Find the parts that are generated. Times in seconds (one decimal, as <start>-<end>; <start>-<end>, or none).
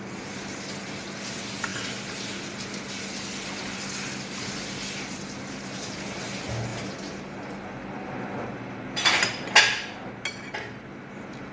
none